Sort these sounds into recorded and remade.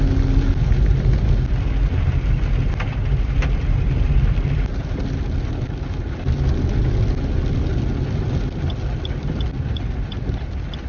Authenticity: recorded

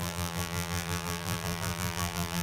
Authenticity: remade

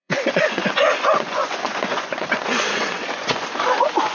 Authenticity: remade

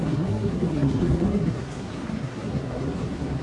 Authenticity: remade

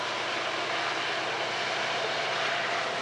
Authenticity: recorded